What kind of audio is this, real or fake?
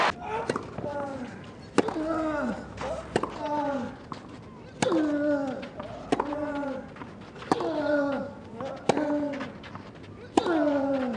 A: real